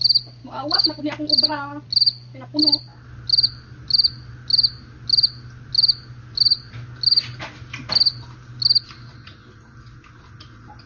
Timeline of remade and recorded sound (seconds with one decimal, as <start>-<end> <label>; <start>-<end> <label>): 0.0-0.4 recorded; 0.4-1.0 remade; 1.0-10.9 recorded